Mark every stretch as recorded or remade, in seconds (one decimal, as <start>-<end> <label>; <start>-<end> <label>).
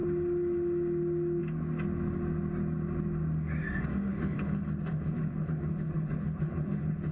0.0-4.1 recorded; 4.1-7.1 remade